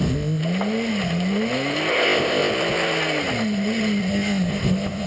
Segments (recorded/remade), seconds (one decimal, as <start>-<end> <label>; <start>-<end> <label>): 0.0-0.4 remade; 0.4-1.9 recorded; 1.9-2.5 remade; 2.5-4.1 recorded; 4.1-5.1 remade